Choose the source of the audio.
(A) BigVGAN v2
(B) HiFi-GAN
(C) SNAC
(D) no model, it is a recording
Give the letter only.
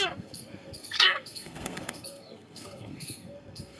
C